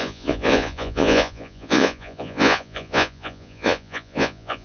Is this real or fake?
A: fake